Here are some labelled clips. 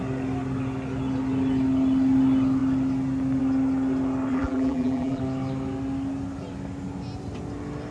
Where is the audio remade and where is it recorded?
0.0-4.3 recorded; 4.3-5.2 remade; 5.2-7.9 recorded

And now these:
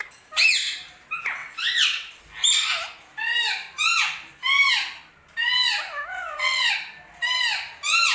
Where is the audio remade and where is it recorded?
0.0-1.4 recorded; 1.4-2.2 remade; 2.2-6.1 recorded; 6.1-6.7 remade; 6.7-8.1 recorded

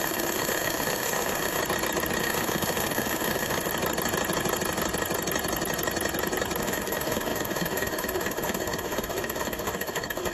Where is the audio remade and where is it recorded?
0.0-1.6 remade; 1.6-2.2 recorded; 2.2-3.7 remade; 3.7-6.6 recorded; 6.6-10.3 remade